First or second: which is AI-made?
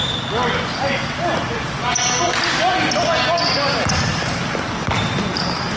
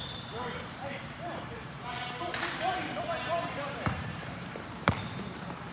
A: second